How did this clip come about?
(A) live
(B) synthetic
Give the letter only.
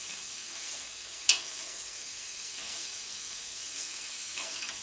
B